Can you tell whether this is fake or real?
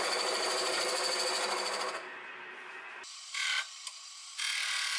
real